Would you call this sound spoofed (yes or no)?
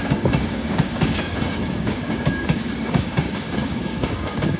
yes